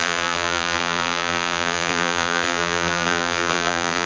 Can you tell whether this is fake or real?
fake